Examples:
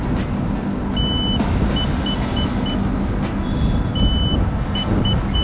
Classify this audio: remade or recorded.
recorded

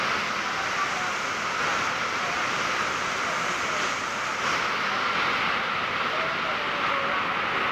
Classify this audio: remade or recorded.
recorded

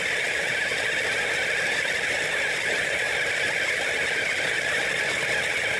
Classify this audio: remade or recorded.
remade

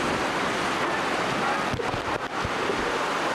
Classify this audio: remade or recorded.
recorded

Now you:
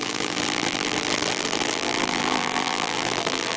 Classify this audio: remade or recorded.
remade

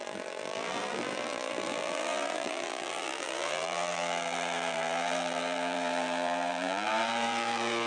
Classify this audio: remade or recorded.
remade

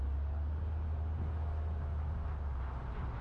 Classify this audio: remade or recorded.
recorded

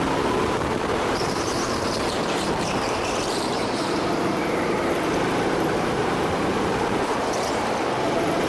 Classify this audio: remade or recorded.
remade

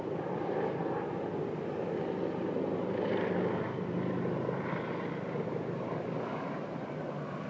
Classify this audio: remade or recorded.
remade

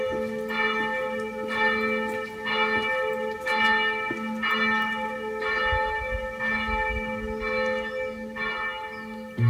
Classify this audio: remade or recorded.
recorded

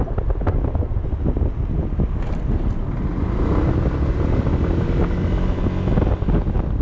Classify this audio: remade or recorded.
recorded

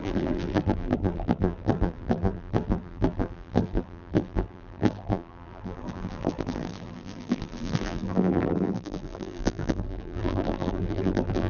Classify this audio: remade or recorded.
remade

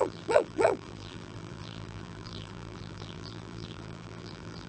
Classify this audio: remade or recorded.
remade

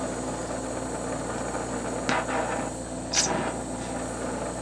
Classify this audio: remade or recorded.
recorded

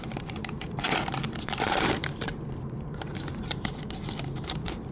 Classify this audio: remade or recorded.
remade